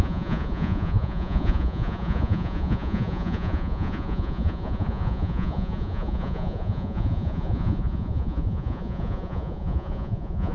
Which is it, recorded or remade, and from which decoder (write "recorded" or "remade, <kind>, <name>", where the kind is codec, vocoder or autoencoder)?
remade, vocoder, Vocos